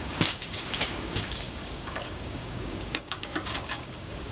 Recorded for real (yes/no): no